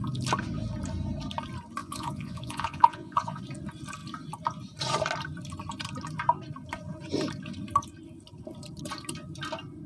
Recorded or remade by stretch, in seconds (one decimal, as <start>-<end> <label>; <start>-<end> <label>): 0.0-1.8 recorded; 1.8-3.4 remade; 3.4-9.9 recorded